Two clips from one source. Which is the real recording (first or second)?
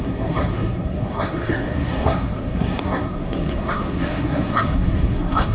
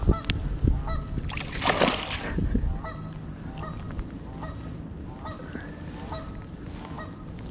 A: second